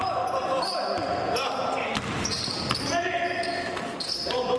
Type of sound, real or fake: real